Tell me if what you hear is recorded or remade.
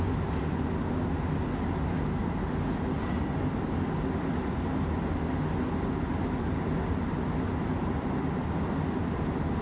recorded